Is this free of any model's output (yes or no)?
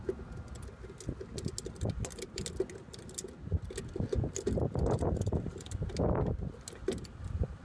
yes